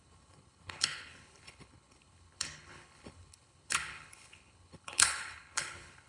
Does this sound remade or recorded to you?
remade